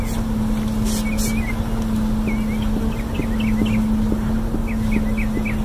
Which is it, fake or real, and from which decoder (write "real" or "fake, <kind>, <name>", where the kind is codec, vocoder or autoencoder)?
real